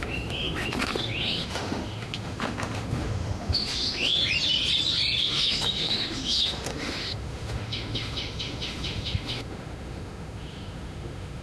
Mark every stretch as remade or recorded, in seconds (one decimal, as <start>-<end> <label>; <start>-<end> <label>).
0.0-4.2 remade; 4.2-5.2 recorded; 5.2-11.4 remade